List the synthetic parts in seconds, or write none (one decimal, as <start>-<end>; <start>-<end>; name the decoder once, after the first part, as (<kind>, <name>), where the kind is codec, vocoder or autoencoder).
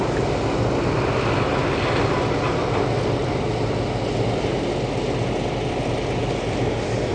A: none